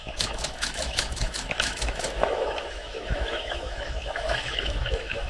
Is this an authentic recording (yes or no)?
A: no